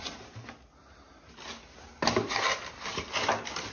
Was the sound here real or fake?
real